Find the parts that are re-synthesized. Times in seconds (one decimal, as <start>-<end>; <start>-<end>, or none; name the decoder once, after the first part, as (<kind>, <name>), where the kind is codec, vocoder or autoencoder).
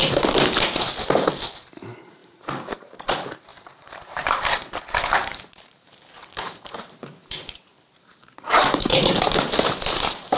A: 2.2-2.8 (vocoder, BigVGAN v2); 3.5-4.8; 5.2-9.3